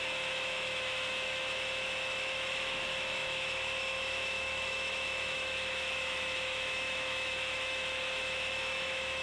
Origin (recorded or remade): remade